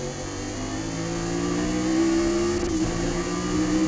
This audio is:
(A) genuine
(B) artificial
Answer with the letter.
A